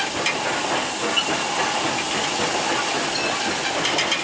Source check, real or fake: real